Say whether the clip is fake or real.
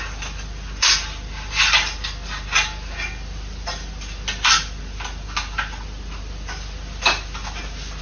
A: real